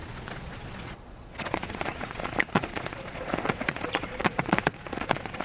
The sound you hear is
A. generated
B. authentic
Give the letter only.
A